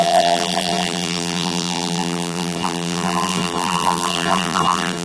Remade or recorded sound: remade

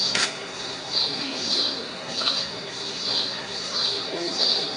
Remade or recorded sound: remade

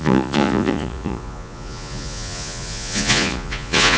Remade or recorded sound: remade